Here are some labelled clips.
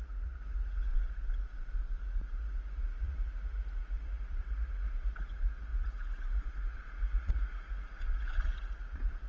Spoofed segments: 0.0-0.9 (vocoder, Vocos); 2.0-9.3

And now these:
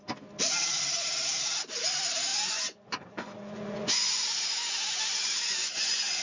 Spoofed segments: 2.3-6.2 (vocoder, Vocos)

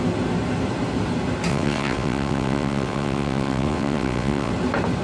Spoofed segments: 1.5-4.5 (vocoder, WaveNeXt)

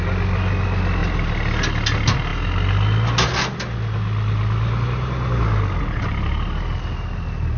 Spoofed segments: none